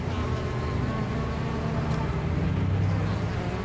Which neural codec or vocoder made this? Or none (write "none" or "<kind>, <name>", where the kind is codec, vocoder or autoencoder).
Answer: none